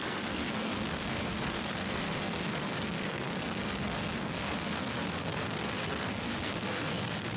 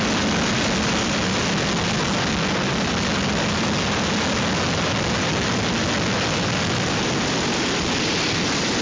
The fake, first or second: first